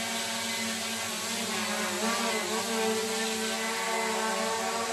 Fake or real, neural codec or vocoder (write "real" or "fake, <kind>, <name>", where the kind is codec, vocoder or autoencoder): real